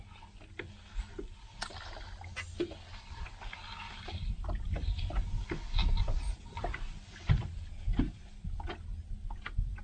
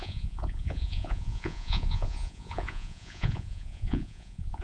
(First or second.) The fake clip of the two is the second